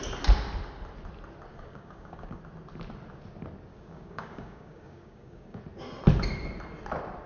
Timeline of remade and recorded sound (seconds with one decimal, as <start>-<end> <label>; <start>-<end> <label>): 0.0-1.5 recorded; 1.5-2.4 remade; 2.4-3.7 recorded; 3.7-5.6 remade; 5.6-7.3 recorded